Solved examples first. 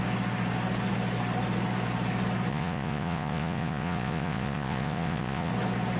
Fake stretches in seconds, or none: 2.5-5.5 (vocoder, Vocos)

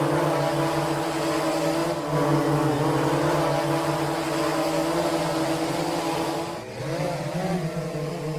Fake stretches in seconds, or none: none

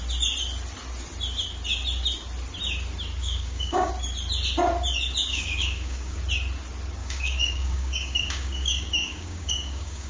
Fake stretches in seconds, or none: 3.2-3.9 (codec, DAC); 5.3-6.2; 7.0-10.1

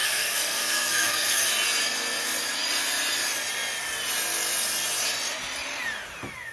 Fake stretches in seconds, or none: 0.0-1.5 (codec, SNAC)